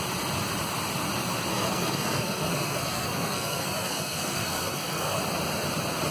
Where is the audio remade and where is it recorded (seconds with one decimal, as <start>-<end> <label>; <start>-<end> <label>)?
0.0-1.5 recorded; 1.5-5.2 remade; 5.2-6.1 recorded